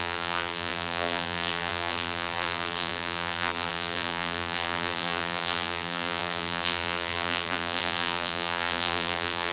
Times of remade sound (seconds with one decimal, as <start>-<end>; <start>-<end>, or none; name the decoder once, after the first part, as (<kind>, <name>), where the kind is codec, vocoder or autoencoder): 0.0-9.5 (vocoder, BigVGAN v2)